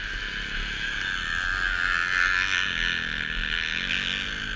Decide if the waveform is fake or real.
real